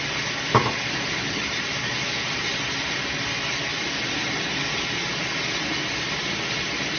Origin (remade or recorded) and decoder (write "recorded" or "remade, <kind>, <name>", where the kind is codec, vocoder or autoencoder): recorded